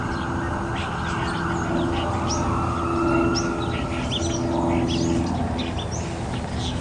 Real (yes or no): yes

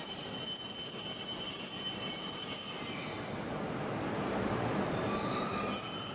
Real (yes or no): yes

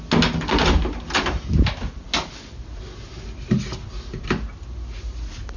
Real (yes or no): yes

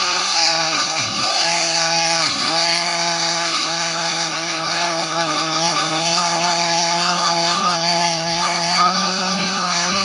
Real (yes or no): no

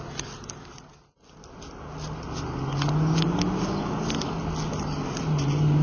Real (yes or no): yes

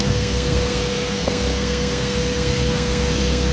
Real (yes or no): no